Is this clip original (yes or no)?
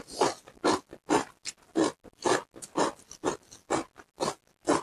yes